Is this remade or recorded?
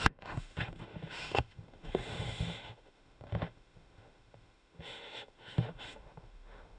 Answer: remade